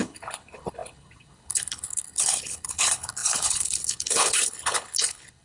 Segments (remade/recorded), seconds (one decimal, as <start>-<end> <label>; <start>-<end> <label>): 0.0-5.4 remade